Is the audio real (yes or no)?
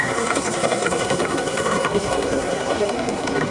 no